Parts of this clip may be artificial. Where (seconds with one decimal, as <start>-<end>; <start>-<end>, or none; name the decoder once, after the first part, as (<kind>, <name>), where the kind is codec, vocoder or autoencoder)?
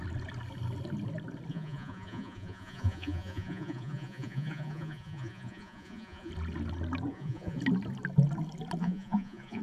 1.5-6.3 (vocoder, Vocos); 7.1-7.6; 8.8-9.6